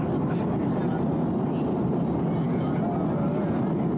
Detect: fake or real real